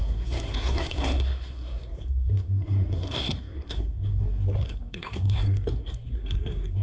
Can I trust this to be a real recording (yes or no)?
no